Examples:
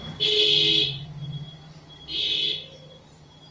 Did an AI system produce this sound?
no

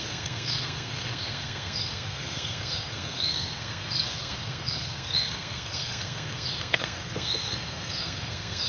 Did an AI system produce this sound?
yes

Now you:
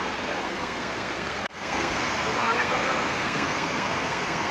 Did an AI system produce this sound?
yes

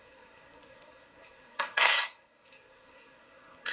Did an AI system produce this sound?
yes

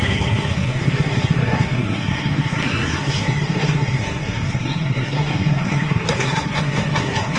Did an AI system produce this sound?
yes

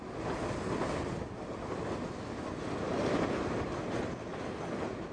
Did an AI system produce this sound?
no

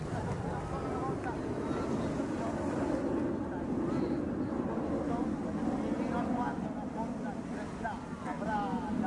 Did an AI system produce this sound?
no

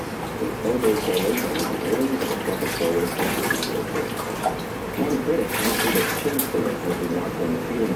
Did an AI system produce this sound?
no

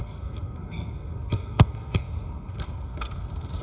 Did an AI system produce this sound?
yes